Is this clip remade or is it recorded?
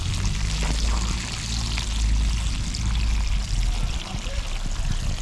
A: recorded